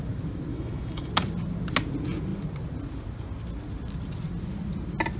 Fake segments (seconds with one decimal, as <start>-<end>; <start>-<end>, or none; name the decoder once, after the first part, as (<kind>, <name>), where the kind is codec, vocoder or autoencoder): 0.5-1.1 (autoencoder, DAC-VAE)